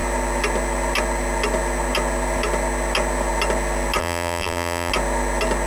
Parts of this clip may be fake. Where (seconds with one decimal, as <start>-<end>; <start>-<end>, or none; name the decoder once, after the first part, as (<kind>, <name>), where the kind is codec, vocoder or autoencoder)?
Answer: 4.0-4.9 (vocoder, BigVGAN v2)